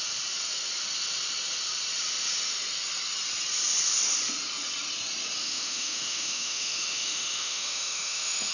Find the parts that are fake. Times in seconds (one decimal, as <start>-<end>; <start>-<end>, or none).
5.4-8.5